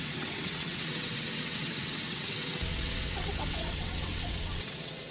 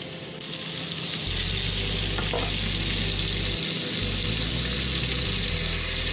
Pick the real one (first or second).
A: second